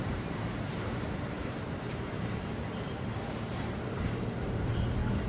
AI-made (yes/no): yes